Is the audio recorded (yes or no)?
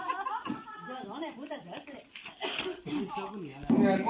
yes